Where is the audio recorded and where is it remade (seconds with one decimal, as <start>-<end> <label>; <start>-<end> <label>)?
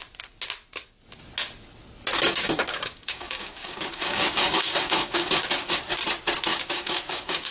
0.0-2.2 recorded; 2.2-5.8 remade; 5.8-6.5 recorded; 6.5-7.5 remade